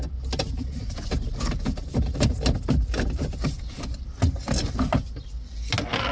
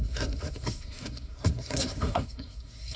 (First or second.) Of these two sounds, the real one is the first